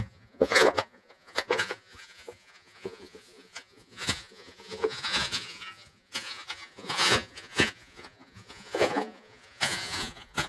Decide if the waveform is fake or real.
fake